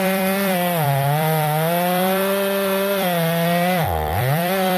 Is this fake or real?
fake